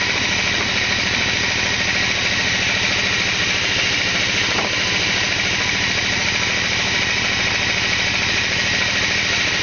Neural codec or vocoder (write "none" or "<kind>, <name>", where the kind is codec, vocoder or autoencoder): none